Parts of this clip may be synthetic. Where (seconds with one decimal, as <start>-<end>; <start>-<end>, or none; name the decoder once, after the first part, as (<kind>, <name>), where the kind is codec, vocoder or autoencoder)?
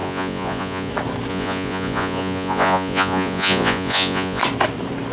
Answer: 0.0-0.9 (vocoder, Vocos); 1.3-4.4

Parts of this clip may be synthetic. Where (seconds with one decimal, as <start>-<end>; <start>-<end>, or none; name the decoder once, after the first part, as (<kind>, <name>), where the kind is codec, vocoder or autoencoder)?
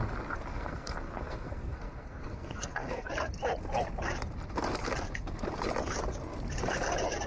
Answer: 0.5-3.1 (codec, SNAC)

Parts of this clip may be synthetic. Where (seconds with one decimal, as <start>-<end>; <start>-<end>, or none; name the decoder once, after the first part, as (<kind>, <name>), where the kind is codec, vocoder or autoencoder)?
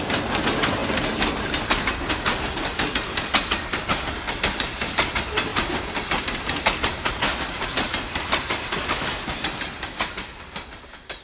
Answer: 5.5-10.4 (vocoder, BigVGAN v2)